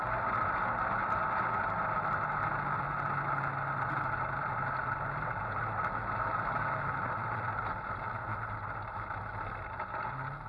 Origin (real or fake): real